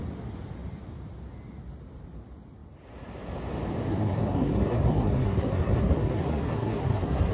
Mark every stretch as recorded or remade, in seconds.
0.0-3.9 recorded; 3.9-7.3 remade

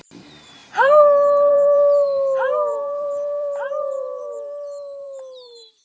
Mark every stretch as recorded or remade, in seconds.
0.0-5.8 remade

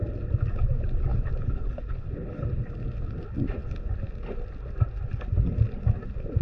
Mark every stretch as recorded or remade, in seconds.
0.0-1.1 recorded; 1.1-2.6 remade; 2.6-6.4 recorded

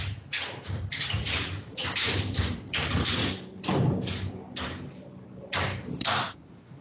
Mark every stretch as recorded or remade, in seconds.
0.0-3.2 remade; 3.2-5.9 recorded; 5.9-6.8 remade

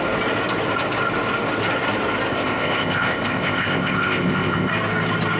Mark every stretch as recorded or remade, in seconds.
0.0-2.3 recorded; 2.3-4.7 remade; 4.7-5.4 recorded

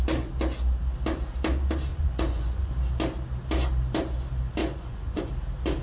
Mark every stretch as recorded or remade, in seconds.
0.0-1.9 recorded; 1.9-2.7 remade; 2.7-4.6 recorded; 4.6-5.3 remade; 5.3-5.8 recorded